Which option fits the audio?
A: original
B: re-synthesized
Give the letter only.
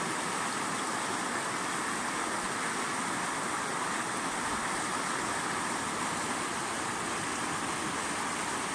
A